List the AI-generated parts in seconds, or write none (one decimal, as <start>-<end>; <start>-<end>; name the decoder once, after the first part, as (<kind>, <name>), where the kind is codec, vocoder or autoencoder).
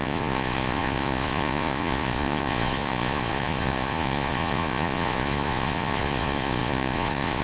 0.0-7.4 (vocoder, Vocos)